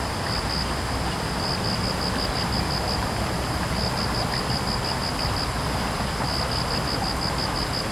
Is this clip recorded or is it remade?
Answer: recorded